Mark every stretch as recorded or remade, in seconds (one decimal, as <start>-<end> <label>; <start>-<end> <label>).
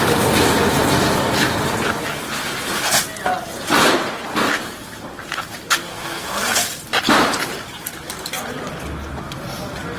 0.0-5.9 recorded; 5.9-6.8 remade; 6.8-10.0 recorded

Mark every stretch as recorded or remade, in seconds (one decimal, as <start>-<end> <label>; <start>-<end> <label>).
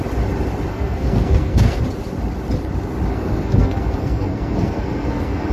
0.0-0.7 recorded; 0.7-1.8 remade; 1.8-3.1 recorded; 3.1-5.5 remade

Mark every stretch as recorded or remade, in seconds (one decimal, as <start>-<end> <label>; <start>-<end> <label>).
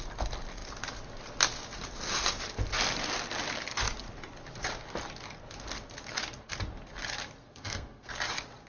0.0-7.4 recorded; 7.4-8.1 remade; 8.1-8.7 recorded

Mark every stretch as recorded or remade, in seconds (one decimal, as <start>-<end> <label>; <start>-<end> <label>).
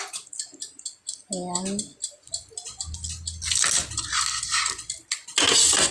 0.0-5.9 recorded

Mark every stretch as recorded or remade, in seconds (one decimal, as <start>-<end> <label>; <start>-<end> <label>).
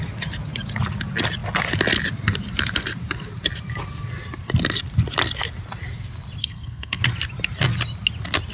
0.0-6.4 recorded; 6.4-7.0 remade; 7.0-8.5 recorded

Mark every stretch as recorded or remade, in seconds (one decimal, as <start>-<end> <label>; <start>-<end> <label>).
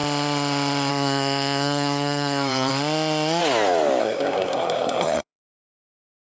0.0-0.9 recorded; 0.9-2.7 remade; 2.7-4.0 recorded; 4.0-6.2 remade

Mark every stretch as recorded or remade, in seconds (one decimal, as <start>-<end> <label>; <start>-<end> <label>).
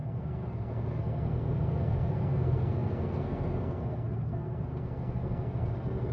0.0-6.1 remade